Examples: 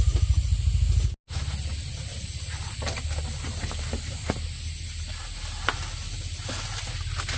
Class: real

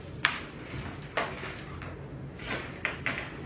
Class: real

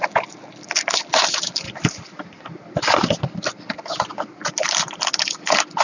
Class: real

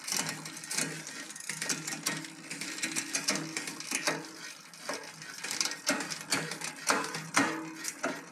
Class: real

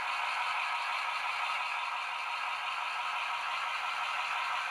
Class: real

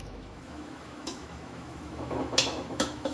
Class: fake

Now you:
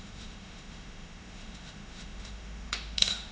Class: fake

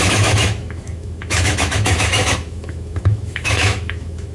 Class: fake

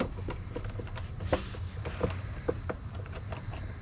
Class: real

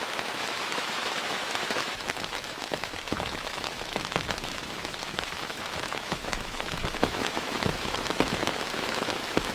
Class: fake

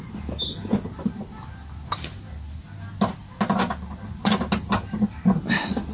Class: real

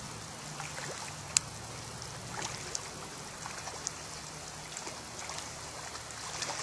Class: real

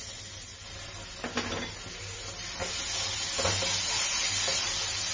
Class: real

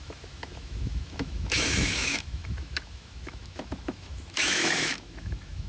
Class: fake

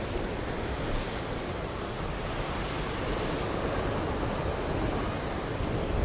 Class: real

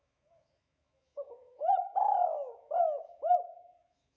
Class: fake